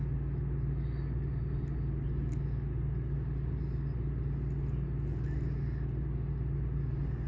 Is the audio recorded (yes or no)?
yes